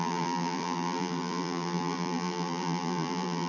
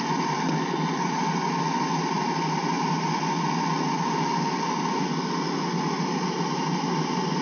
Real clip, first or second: second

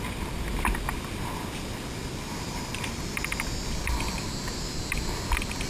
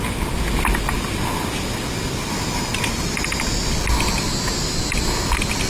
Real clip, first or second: second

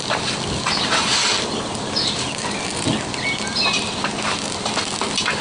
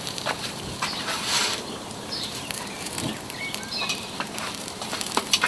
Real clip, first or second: first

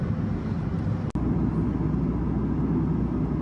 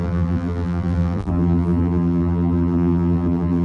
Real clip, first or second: first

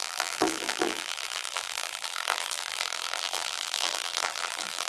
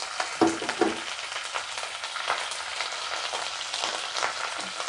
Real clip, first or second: second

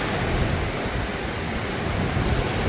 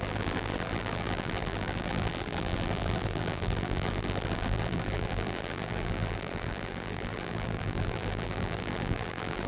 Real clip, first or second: first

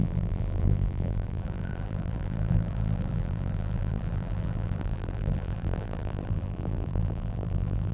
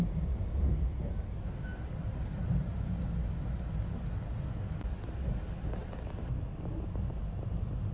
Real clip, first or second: second